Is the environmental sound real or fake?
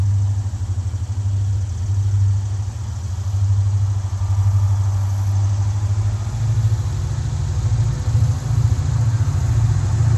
real